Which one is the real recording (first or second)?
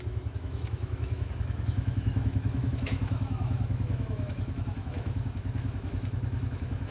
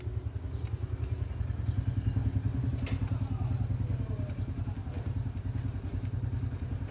second